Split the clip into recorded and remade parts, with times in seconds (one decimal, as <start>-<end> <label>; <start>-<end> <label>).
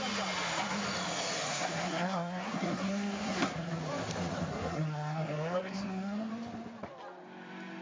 0.0-1.5 recorded; 1.5-3.7 remade; 3.7-4.5 recorded; 4.5-6.3 remade; 6.3-7.8 recorded